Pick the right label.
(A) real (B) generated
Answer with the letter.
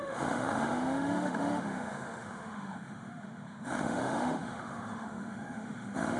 B